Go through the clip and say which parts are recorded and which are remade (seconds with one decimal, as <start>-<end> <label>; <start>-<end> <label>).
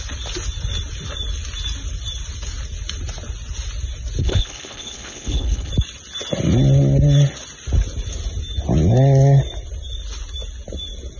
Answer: 0.0-4.2 recorded; 4.2-5.7 remade; 5.7-11.2 recorded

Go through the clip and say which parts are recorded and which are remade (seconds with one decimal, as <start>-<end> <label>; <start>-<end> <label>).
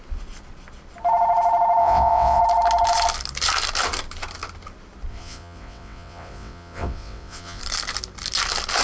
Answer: 0.0-1.8 recorded; 1.8-2.4 remade; 2.4-5.1 recorded; 5.1-7.6 remade; 7.6-8.8 recorded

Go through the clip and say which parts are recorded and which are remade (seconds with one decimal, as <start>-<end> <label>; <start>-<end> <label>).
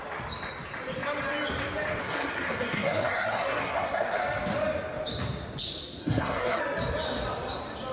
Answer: 0.0-2.0 recorded; 2.0-4.2 remade; 4.2-6.0 recorded; 6.0-6.6 remade; 6.6-7.9 recorded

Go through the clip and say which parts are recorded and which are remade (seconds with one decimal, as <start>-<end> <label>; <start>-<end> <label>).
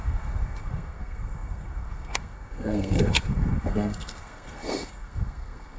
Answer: 0.0-5.8 remade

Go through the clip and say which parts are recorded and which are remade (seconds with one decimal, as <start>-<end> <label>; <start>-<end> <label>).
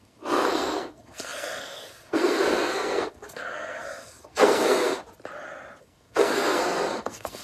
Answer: 0.0-5.0 remade; 5.0-5.8 recorded; 5.8-7.4 remade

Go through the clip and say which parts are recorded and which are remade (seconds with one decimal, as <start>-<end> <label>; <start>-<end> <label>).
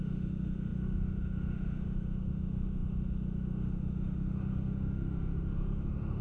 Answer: 0.0-6.2 remade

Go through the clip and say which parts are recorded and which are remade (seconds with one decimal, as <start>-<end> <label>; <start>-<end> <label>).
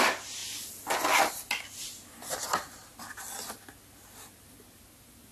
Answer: 0.0-5.3 recorded